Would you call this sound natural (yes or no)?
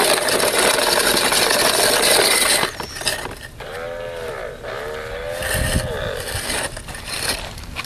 yes